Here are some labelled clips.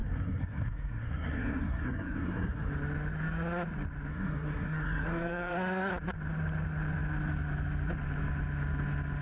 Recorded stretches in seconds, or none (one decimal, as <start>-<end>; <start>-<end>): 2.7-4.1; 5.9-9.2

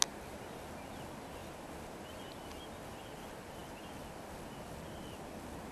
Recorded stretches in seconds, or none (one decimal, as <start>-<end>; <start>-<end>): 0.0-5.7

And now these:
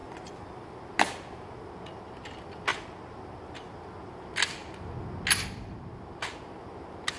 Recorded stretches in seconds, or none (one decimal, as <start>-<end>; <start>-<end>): 0.0-7.2